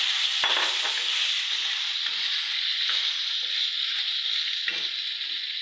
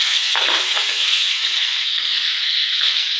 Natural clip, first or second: first